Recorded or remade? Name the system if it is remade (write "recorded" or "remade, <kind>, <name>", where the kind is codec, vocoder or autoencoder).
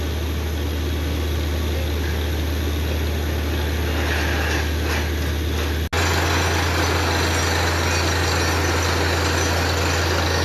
recorded